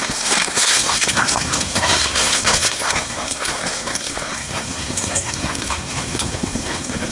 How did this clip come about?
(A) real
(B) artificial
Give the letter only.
B